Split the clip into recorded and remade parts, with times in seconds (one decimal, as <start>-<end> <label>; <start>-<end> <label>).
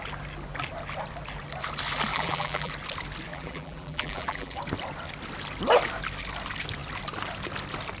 0.0-2.1 recorded; 2.1-2.7 remade; 2.7-3.3 recorded; 3.3-4.6 remade; 4.6-8.0 recorded